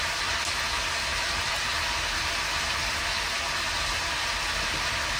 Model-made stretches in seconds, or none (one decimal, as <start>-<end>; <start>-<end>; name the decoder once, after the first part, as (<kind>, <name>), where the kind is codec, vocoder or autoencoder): 1.1-1.7 (vocoder, BigVGAN v2)